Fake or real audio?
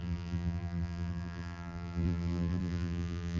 fake